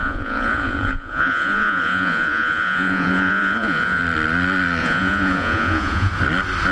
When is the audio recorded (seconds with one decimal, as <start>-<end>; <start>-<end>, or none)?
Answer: 4.0-4.8; 6.1-6.7